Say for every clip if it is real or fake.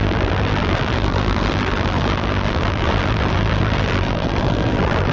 fake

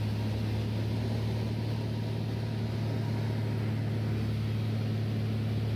real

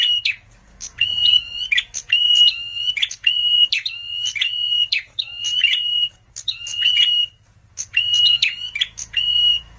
fake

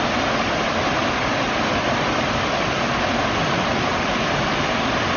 real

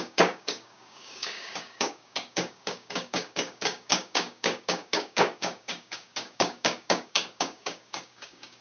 fake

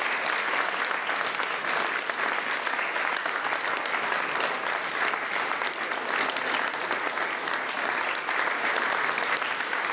real